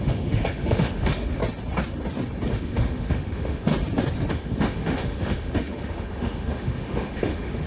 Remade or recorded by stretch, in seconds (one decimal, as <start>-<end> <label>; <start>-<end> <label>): 0.0-1.4 remade; 1.4-2.5 recorded; 2.5-3.7 remade; 3.7-4.3 recorded; 4.3-7.7 remade